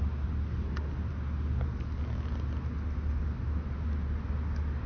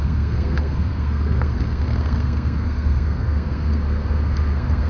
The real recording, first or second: first